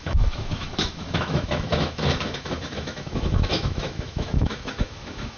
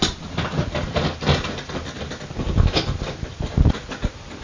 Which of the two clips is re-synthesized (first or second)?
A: first